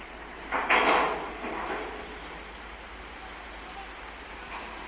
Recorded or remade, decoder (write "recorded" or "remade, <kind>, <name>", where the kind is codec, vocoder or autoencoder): recorded